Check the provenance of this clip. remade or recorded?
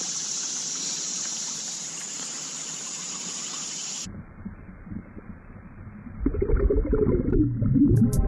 remade